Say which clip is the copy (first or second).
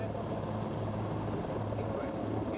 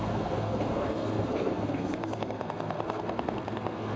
second